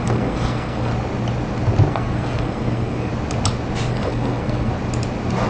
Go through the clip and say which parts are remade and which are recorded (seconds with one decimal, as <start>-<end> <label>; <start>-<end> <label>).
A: 0.0-0.9 remade; 0.9-1.9 recorded; 1.9-3.1 remade; 3.1-3.9 recorded; 3.9-4.7 remade; 4.7-5.5 recorded